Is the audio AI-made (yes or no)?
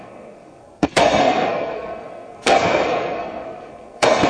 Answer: yes